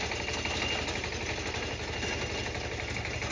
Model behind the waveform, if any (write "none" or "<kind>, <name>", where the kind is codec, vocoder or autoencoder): none